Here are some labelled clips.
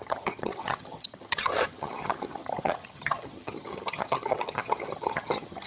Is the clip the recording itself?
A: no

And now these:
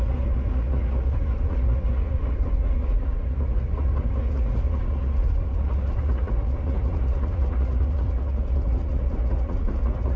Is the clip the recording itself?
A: no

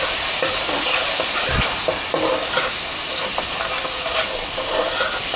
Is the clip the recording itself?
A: no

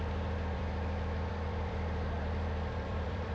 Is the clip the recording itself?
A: no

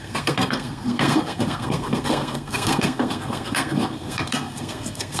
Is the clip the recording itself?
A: no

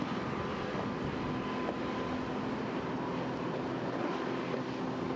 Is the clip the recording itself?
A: yes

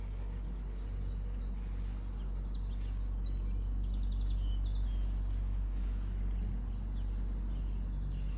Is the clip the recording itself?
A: yes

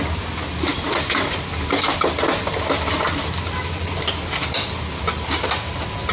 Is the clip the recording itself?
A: yes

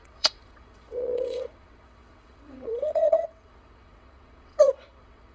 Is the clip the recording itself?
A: no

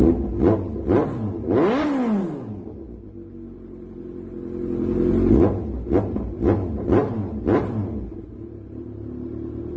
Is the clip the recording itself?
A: yes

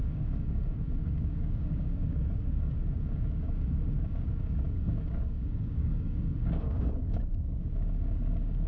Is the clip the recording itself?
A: no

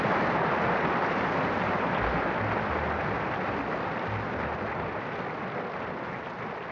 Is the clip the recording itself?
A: yes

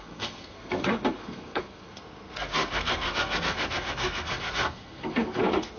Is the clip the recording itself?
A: no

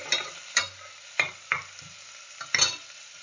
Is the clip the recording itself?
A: yes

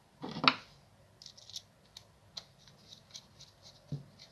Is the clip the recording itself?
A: yes